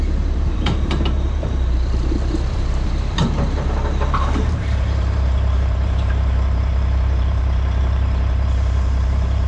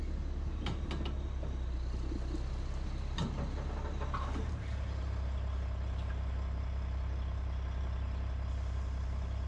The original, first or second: second